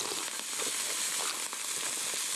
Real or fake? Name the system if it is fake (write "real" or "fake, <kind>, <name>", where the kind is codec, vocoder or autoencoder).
real